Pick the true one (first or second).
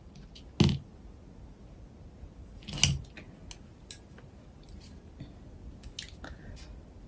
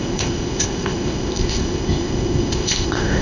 first